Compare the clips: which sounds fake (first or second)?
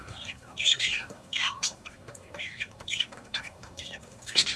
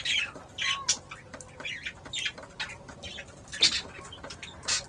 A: first